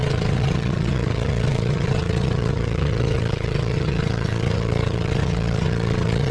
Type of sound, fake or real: fake